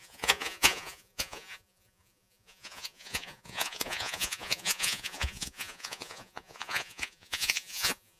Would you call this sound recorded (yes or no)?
no